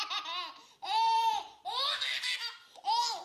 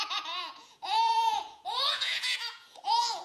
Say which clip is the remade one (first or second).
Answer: second